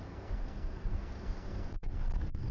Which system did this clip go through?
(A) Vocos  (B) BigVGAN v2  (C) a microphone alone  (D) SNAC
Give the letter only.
D